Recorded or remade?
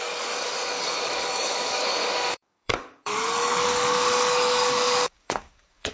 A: remade